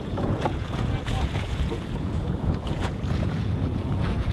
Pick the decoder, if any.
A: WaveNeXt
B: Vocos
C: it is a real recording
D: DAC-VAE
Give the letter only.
B